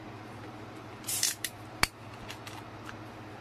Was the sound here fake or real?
real